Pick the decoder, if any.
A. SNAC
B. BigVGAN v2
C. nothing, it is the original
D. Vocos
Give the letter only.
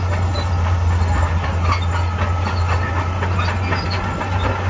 C